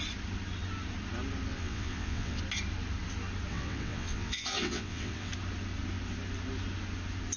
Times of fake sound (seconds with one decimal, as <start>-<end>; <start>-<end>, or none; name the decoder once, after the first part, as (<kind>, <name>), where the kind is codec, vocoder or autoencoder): 1.5-2.4 (vocoder, WaveNeXt); 3.5-5.3